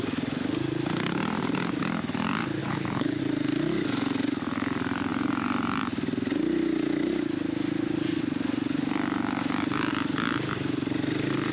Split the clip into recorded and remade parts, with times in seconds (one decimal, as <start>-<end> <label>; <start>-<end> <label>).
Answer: 0.0-2.6 recorded; 2.6-3.2 remade; 3.2-11.5 recorded